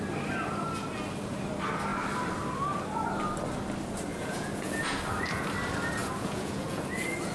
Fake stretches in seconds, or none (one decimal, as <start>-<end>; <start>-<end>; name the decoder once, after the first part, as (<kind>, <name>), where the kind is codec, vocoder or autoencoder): 4.1-5.0 (vocoder, Vocos); 6.0-6.8

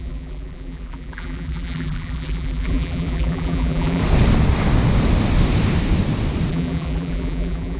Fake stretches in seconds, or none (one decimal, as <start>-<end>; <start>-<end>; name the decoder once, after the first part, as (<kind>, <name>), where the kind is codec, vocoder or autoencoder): 0.0-4.0 (vocoder, BigVGAN v2); 6.5-7.8

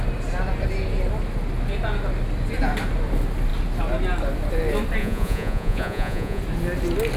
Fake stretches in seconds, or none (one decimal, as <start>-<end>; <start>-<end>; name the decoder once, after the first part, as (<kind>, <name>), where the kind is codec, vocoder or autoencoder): 5.0-6.4 (vocoder, Vocos)

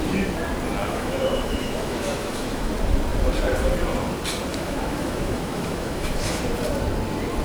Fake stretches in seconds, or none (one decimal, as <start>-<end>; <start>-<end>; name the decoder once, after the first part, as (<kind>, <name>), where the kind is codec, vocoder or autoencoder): 0.8-2.7 (autoencoder, DAC-VAE); 4.5-6.4

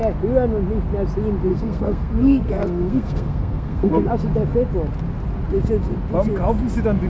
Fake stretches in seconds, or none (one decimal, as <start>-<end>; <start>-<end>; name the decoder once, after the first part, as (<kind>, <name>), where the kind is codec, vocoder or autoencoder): 1.5-4.1 (codec, SNAC)